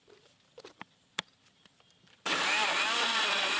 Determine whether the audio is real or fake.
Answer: fake